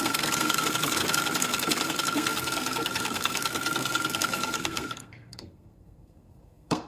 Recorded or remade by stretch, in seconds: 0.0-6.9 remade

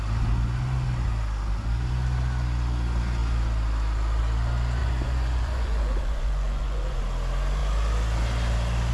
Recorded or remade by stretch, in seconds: 0.0-4.8 recorded; 4.8-7.0 remade; 7.0-8.9 recorded

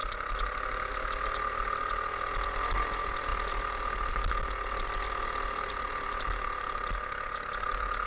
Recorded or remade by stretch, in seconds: 0.0-8.1 recorded

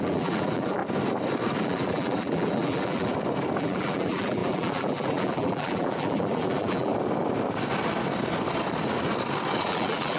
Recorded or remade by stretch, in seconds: 0.0-0.8 remade; 0.8-1.6 recorded; 1.6-3.1 remade; 3.1-3.6 recorded; 3.6-6.9 remade; 6.9-9.6 recorded; 9.6-10.2 remade